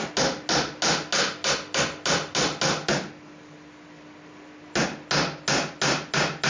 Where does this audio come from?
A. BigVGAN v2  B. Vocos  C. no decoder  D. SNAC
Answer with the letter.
C